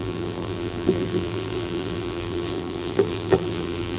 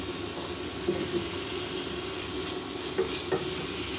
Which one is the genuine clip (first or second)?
second